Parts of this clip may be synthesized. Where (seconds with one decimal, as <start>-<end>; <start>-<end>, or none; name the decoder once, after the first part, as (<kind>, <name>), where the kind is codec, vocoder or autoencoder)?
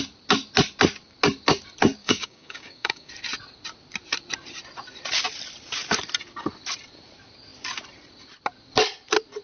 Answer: 2.0-3.1 (codec, DAC)